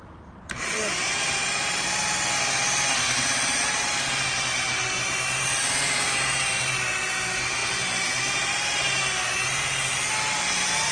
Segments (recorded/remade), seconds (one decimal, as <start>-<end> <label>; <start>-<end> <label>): 0.0-10.9 recorded